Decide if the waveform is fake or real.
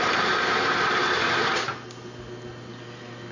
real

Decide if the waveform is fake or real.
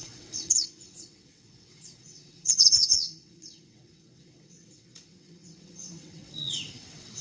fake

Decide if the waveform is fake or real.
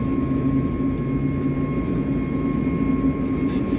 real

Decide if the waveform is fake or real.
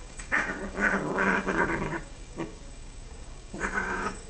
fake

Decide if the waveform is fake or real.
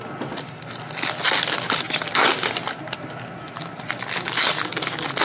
real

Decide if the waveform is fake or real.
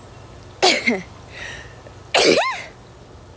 real